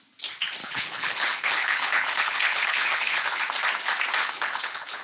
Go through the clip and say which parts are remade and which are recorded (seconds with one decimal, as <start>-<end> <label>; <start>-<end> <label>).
0.0-0.6 recorded; 0.6-3.4 remade; 3.4-4.2 recorded; 4.2-5.0 remade